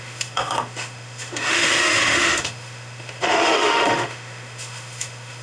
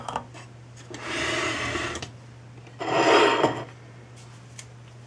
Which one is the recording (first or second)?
second